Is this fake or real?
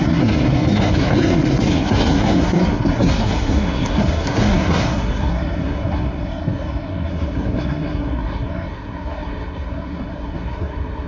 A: fake